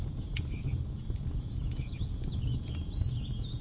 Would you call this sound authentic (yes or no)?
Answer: no